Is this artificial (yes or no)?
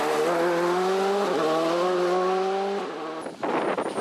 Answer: no